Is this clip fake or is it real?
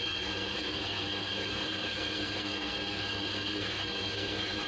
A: fake